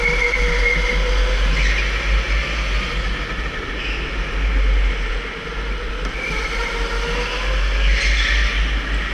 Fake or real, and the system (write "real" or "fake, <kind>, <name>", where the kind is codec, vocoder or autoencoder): real